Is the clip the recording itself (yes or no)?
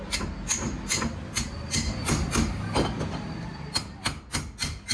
yes